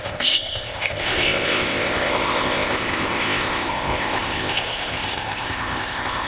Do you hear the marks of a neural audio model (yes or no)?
yes